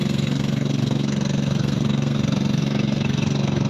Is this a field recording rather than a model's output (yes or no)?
no